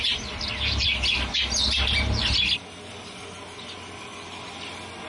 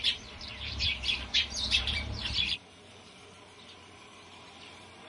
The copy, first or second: second